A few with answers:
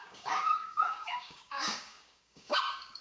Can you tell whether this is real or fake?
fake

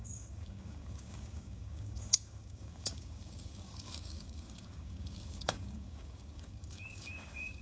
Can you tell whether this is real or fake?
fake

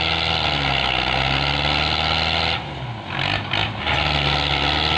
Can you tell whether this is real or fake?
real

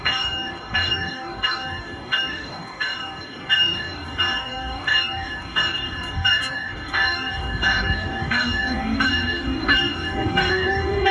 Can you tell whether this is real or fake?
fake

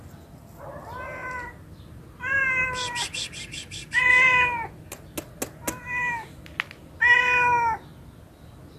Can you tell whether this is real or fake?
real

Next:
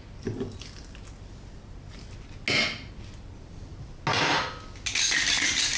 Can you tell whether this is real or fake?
real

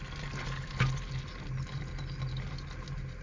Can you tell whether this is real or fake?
real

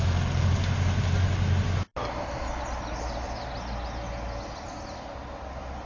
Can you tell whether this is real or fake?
real